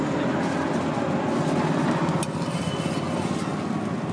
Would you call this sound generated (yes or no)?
no